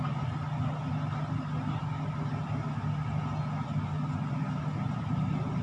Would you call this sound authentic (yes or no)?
yes